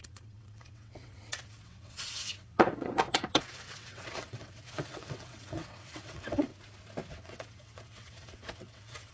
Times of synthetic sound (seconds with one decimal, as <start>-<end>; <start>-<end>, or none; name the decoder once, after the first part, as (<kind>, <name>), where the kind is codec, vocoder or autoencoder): 0.0-6.5 (vocoder, WaveNeXt); 7.1-9.1